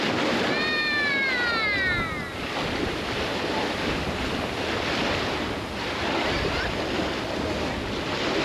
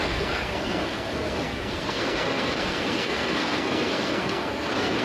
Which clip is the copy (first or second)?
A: second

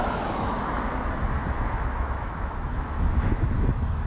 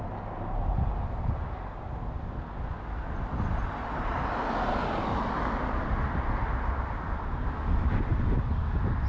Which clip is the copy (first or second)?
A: first